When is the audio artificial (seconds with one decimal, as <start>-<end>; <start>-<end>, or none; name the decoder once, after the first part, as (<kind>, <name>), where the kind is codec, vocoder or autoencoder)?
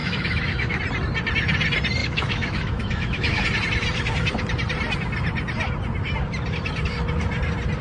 0.0-0.8 (autoencoder, DAC-VAE); 2.0-3.4